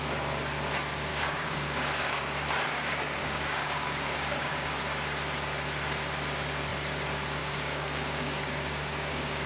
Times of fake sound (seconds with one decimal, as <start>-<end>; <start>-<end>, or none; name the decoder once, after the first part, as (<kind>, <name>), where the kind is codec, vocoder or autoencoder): 1.1-2.2 (codec, DAC); 3.2-4.8; 7.4-9.5